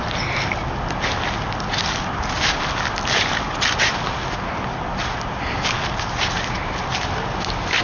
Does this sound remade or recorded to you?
recorded